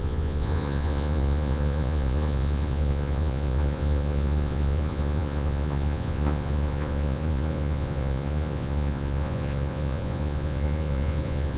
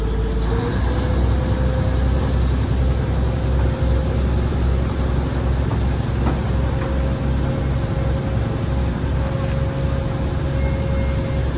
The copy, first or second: first